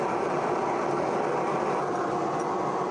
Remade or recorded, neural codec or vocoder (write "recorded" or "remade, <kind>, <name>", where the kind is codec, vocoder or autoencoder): recorded